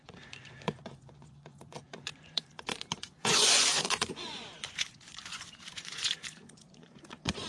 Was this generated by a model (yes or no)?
yes